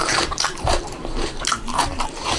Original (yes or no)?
no